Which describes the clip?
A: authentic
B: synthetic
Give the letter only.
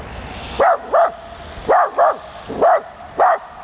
A